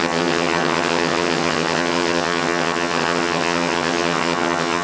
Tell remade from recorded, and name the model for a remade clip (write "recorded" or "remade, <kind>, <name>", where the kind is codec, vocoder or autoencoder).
remade, vocoder, HiFi-GAN